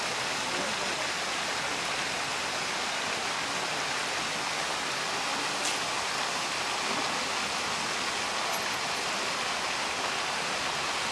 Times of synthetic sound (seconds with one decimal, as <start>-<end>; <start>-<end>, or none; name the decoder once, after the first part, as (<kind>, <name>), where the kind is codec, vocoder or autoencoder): none